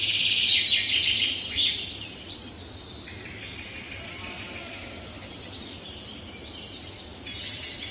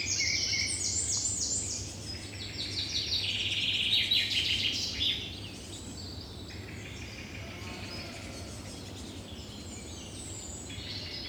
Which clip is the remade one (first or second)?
first